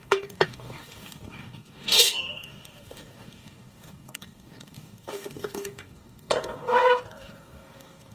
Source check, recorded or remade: remade